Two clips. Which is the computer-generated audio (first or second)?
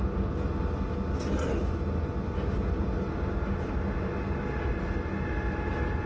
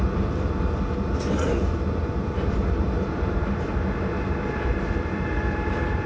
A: second